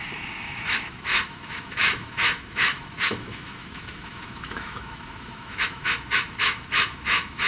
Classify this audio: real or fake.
fake